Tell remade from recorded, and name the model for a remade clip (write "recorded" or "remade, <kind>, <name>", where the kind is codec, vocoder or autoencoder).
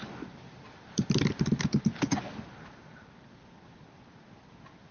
recorded